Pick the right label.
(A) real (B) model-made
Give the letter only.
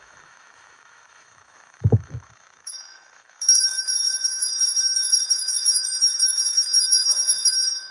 B